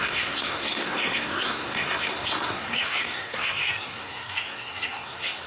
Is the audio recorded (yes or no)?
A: no